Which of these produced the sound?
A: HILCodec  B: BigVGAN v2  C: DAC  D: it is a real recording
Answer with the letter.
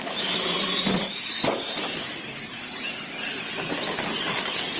D